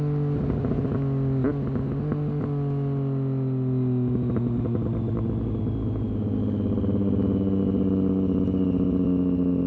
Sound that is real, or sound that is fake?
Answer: real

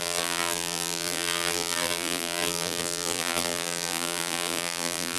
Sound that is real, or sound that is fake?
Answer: fake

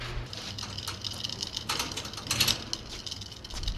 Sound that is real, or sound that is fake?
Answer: real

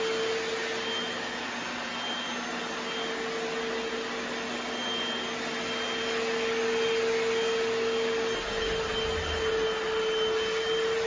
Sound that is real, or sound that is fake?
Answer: real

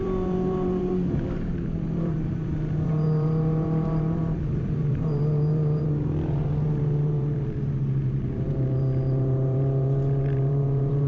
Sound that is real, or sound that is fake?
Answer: fake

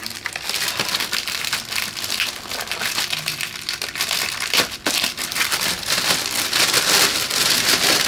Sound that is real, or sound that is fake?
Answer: real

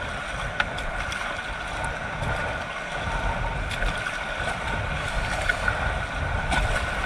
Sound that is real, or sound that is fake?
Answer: real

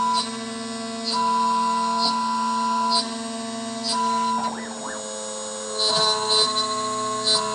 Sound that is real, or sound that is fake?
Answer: real